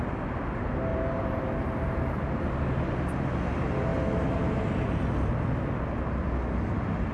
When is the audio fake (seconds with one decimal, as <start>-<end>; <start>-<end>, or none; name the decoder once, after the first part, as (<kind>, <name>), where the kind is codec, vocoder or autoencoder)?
0.9-1.4 (vocoder, BigVGAN v2)